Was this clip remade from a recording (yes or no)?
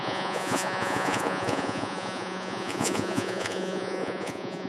yes